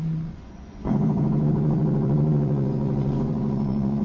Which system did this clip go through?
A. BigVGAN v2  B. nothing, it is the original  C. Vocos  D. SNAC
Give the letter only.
C